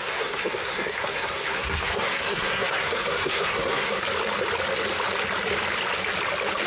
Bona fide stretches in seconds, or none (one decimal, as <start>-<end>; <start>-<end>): 4.0-6.7